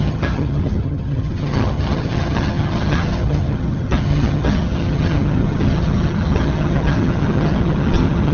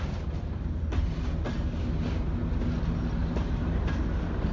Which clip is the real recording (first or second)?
second